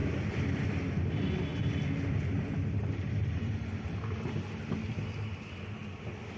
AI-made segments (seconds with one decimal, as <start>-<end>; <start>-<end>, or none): 0.0-0.7; 1.5-4.1